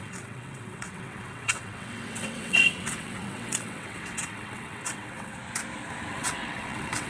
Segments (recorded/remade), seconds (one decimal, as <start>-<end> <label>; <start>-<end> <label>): 0.0-5.4 remade; 5.4-6.1 recorded; 6.1-7.1 remade